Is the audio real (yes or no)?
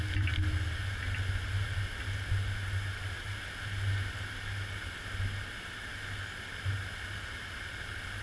yes